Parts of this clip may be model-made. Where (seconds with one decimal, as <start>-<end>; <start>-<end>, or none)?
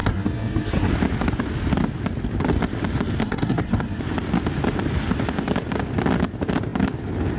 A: 0.0-0.9; 3.2-4.0